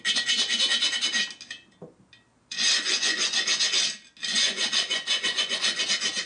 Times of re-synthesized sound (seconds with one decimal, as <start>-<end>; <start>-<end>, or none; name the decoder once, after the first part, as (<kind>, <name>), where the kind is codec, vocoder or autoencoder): 2.3-3.6 (vocoder, Vocos); 4.3-5.8